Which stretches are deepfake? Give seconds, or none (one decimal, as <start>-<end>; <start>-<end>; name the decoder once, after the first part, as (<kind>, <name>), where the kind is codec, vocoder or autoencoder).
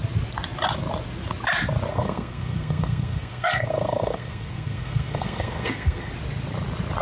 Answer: 1.9-6.1 (codec, SNAC)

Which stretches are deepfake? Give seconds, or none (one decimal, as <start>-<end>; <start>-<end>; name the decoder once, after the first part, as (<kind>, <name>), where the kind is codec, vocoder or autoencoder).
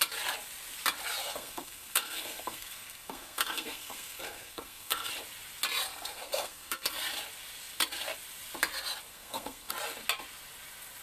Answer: 1.2-5.1 (codec, SNAC); 5.9-6.9; 9.1-9.7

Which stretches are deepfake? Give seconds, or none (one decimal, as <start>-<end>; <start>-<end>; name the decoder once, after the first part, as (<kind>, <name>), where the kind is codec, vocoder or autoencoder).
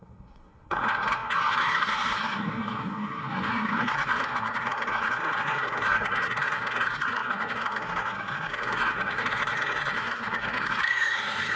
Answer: 0.0-11.6 (codec, SNAC)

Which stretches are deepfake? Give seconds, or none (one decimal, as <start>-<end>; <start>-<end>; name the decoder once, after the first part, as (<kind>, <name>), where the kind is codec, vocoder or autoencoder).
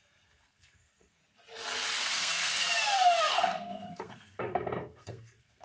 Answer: 0.0-1.2 (codec, SNAC); 2.0-2.5; 3.2-5.6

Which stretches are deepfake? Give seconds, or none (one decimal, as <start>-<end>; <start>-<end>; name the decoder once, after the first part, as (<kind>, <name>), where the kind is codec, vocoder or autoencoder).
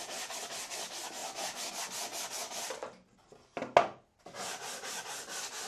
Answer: none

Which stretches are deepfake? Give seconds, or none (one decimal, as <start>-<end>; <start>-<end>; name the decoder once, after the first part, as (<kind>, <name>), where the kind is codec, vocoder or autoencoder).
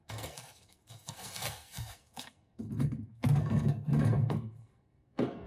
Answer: 0.0-5.5 (codec, SNAC)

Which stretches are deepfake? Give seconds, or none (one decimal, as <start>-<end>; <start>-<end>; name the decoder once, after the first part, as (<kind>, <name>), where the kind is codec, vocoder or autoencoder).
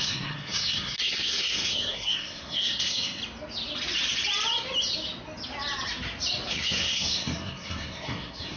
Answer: 0.0-3.2 (codec, SNAC); 6.5-8.6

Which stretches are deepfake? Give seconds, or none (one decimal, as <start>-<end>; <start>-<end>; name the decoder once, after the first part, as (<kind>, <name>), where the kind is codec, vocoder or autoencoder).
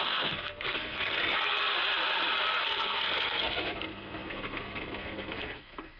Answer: 0.0-1.2 (codec, SNAC); 2.6-6.0